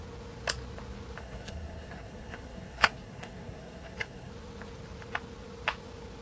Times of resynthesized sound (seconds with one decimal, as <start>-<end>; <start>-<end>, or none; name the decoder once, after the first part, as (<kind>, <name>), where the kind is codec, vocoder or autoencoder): 1.2-4.3 (codec, SNAC)